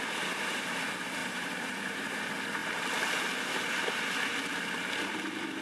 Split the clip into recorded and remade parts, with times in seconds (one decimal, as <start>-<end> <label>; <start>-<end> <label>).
0.0-1.2 recorded; 1.2-2.2 remade; 2.2-5.6 recorded

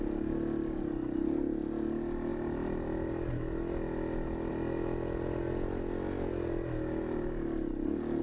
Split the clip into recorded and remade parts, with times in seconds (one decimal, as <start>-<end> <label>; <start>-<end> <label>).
0.0-8.2 recorded

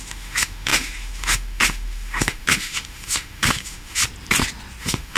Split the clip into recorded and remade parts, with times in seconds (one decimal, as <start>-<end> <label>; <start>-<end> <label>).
0.0-4.0 remade; 4.0-4.8 recorded; 4.8-5.2 remade

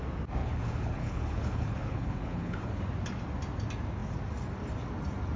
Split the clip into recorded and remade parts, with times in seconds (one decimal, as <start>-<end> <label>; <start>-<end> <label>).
0.0-0.4 recorded; 0.4-2.8 remade; 2.8-5.4 recorded